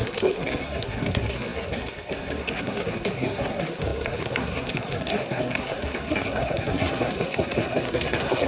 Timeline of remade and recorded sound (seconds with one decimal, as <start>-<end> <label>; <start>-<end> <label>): 0.0-8.5 remade

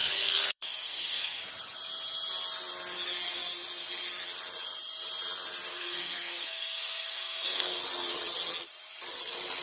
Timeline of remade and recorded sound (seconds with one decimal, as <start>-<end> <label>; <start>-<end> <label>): 0.0-1.4 remade; 1.4-5.7 recorded; 5.7-7.8 remade; 7.8-9.6 recorded

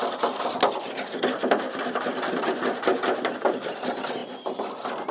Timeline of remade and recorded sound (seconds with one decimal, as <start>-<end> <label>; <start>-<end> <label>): 0.0-5.1 recorded

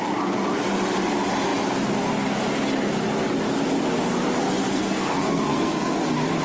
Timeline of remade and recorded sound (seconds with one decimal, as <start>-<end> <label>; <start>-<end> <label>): 0.0-4.7 recorded; 4.7-6.0 remade; 6.0-6.4 recorded

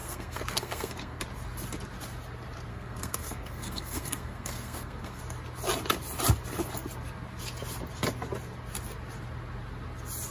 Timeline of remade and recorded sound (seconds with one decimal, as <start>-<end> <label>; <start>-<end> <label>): 0.0-1.2 remade; 1.2-2.7 recorded; 2.7-5.2 remade; 5.2-10.3 recorded